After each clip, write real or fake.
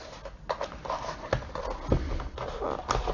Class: real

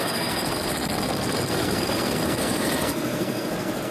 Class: fake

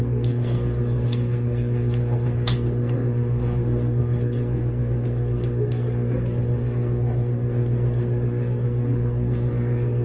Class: fake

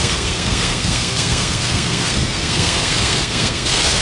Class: fake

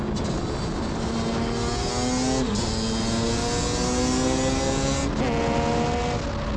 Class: real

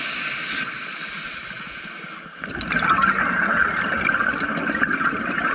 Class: real